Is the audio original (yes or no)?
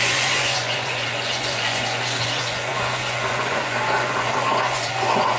no